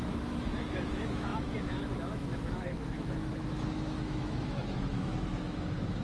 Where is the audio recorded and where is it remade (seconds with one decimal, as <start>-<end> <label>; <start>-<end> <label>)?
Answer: 0.0-6.0 remade